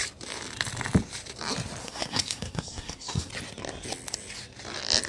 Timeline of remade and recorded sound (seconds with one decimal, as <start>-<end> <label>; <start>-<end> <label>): 0.0-1.8 recorded; 1.8-3.3 remade; 3.3-5.1 recorded